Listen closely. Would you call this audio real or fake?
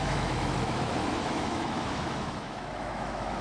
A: fake